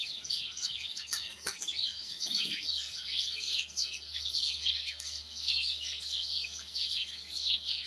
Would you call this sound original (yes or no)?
no